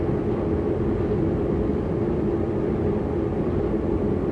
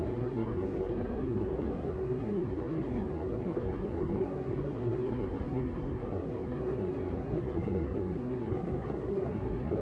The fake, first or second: second